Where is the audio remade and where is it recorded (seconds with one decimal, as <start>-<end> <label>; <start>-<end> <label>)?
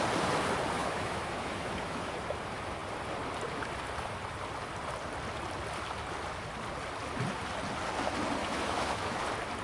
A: 0.0-0.8 recorded; 0.8-2.1 remade; 2.1-8.4 recorded; 8.4-9.2 remade; 9.2-9.6 recorded